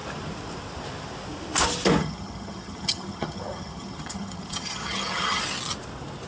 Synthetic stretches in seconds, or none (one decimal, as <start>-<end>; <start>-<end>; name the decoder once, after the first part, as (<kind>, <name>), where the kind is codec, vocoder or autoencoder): 2.0-5.4 (vocoder, HiFi-GAN)